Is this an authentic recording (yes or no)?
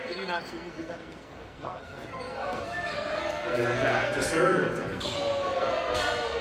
no